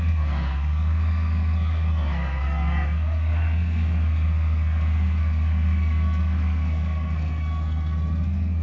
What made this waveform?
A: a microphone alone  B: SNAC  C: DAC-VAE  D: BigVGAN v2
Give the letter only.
B